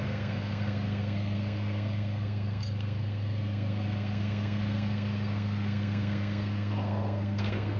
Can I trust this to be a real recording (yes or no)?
no